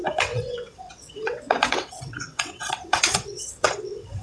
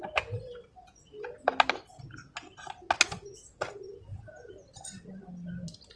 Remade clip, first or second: first